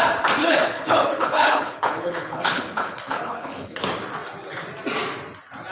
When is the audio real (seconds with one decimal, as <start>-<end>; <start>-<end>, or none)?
0.0-0.4; 3.8-5.7